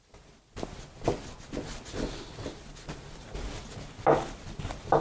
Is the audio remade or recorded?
recorded